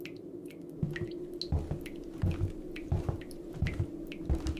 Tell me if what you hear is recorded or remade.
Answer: recorded